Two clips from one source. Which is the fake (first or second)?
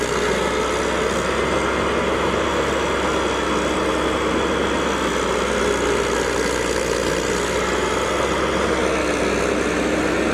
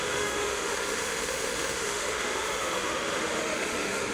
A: second